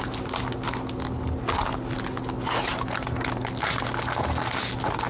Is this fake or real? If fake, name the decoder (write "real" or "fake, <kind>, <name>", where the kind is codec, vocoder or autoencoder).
real